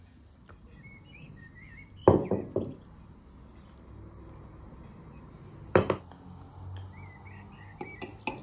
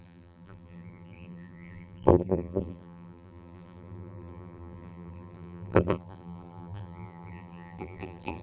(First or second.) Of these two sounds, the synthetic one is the second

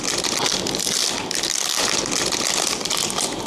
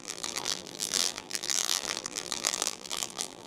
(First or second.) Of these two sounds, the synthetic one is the second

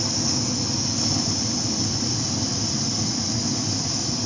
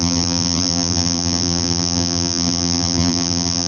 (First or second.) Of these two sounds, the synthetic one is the second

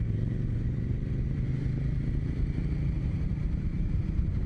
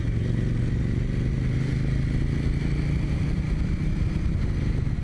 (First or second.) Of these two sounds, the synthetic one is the first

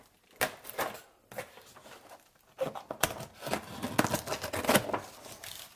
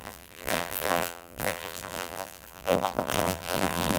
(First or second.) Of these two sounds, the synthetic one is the second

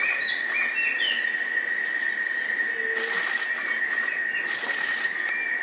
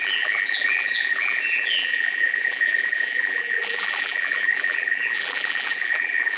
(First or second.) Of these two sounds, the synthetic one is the second